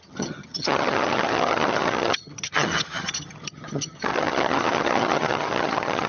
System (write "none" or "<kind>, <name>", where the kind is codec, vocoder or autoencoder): vocoder, HiFi-GAN